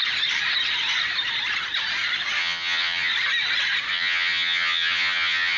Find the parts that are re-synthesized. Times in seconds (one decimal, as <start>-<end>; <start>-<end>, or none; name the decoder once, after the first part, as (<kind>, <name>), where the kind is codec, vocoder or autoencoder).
2.4-3.1 (vocoder, HiFi-GAN); 3.9-5.6

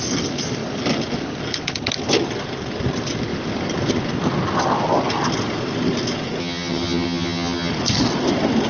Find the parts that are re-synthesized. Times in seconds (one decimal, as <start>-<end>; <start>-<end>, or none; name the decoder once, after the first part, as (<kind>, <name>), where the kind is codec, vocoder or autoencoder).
6.4-7.7 (vocoder, HiFi-GAN)